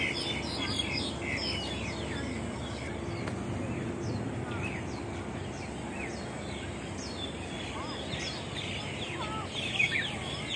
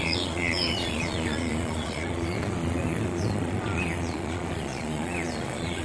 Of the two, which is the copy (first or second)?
second